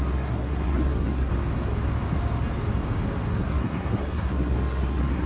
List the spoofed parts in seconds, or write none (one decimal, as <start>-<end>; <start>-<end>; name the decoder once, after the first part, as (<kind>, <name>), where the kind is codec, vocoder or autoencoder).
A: 0.0-1.3 (codec, SNAC); 3.3-5.3